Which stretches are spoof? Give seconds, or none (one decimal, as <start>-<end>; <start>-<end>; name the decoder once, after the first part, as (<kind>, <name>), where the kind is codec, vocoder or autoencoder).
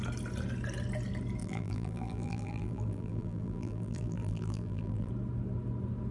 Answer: 1.4-5.1 (vocoder, BigVGAN v2)